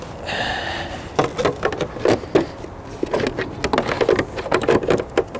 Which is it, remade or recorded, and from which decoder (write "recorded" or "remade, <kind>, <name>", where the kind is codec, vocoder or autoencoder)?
recorded